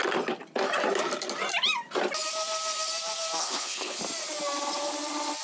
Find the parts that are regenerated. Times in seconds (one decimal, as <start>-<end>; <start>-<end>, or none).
3.4-4.0